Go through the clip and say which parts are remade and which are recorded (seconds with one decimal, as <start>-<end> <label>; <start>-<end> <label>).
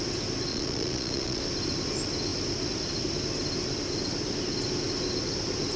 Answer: 0.0-0.5 recorded; 0.5-1.4 remade; 1.4-5.8 recorded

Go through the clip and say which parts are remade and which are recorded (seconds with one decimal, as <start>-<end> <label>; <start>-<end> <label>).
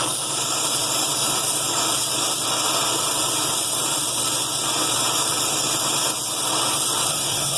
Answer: 0.0-7.1 recorded; 7.1-7.6 remade